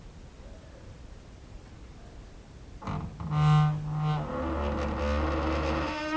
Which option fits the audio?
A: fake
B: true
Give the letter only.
B